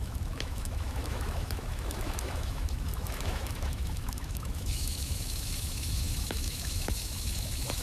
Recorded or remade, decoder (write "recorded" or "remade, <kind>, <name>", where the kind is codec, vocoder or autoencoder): remade, autoencoder, DAC-VAE